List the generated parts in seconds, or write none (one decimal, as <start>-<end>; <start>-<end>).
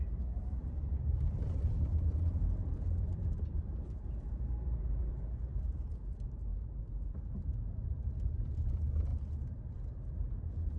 0.0-9.1; 10.1-10.8